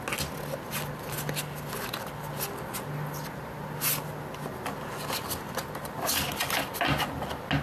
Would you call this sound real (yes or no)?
yes